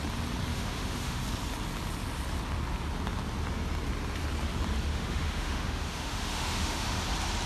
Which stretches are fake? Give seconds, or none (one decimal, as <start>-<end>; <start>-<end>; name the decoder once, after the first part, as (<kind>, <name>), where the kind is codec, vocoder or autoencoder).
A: 0.5-1.2 (autoencoder, DAC-VAE); 4.9-7.0